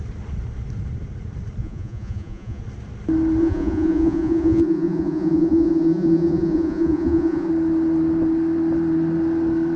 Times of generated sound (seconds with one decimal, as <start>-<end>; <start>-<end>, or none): 1.6-2.6; 3.4-7.5